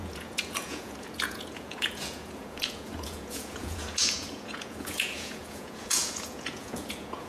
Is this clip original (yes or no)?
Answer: no